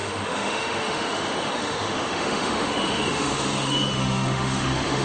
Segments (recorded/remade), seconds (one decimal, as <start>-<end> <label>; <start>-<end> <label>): 0.0-5.0 remade